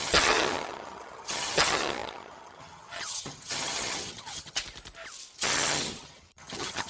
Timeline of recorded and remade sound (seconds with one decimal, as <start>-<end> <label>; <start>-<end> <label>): 0.0-4.6 remade; 4.6-5.4 recorded; 5.4-6.9 remade